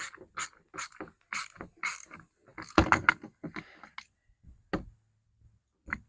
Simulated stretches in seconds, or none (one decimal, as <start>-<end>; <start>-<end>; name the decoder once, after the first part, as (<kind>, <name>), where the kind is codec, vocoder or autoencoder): none